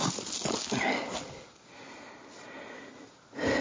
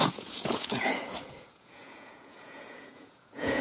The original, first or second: first